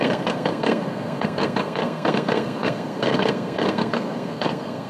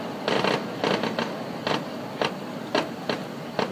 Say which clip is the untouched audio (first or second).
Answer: second